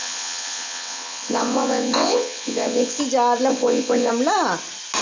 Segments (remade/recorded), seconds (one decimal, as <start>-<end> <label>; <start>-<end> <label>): 0.0-3.0 remade; 3.0-3.5 recorded; 3.5-4.1 remade; 4.1-5.0 recorded